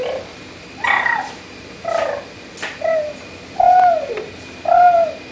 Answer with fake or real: real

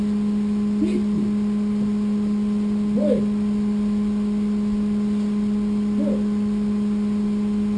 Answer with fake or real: real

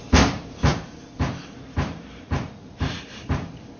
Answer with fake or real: fake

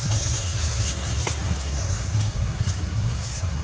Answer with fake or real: fake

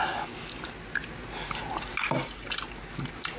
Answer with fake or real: real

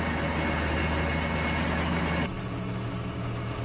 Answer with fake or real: real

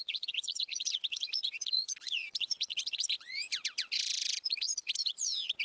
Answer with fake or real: fake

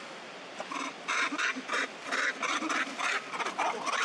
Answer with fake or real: real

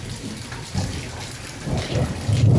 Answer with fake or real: real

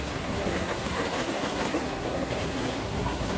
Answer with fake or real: fake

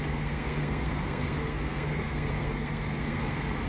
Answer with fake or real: fake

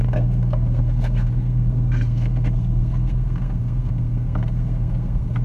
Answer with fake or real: fake